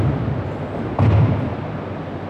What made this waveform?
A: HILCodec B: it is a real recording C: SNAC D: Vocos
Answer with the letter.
B